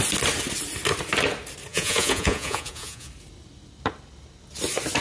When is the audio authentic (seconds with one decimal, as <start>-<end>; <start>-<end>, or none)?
0.0-1.7; 3.1-5.0